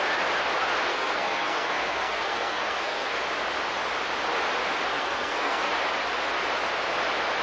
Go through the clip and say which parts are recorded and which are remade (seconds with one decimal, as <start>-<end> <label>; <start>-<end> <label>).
0.0-0.9 recorded; 0.9-3.2 remade; 3.2-4.9 recorded; 4.9-5.7 remade; 5.7-7.4 recorded